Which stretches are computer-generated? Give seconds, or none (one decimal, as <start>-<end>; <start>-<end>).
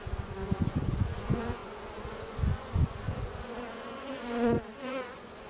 0.0-5.5